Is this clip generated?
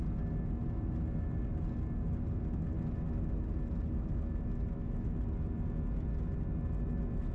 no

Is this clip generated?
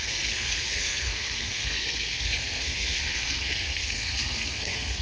yes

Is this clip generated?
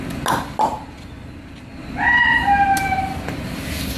no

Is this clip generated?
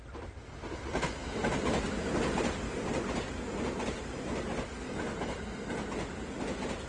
no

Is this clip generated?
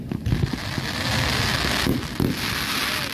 no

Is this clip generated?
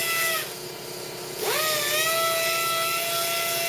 no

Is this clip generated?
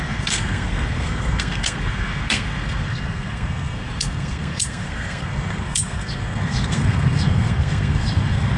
yes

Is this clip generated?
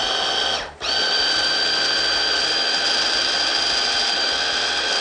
no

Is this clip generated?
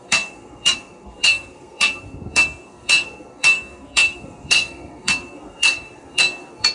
yes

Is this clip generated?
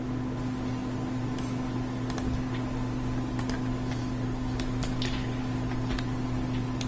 no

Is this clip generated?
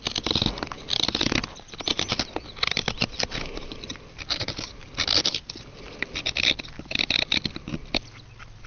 no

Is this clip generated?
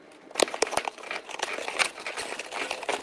no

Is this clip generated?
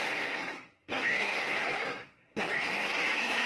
yes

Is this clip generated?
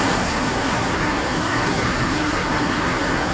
yes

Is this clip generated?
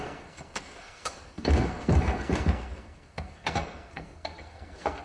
yes